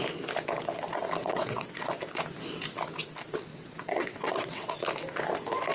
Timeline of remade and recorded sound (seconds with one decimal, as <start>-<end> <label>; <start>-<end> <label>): 0.0-1.2 recorded; 1.2-1.9 remade; 1.9-3.5 recorded; 3.5-4.7 remade; 4.7-5.7 recorded